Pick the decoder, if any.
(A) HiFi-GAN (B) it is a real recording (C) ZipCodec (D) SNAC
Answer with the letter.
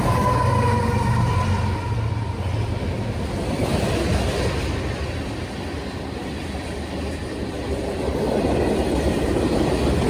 B